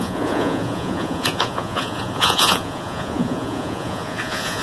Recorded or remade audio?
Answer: remade